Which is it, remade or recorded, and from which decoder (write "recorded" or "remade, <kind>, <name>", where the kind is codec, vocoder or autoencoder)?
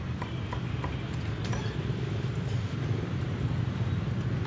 recorded